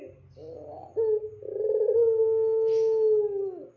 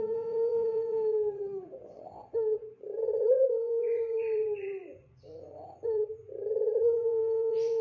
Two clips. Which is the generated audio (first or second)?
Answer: second